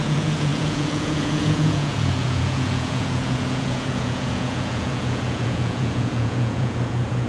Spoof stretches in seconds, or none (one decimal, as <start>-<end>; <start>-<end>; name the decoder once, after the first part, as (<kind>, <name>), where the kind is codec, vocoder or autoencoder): 0.0-7.3 (vocoder, Vocos)